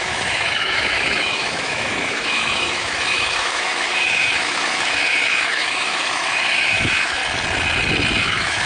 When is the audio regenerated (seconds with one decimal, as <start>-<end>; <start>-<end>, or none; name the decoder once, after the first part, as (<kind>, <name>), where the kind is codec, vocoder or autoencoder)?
0.0-7.2 (autoencoder, DAC-VAE); 8.2-8.7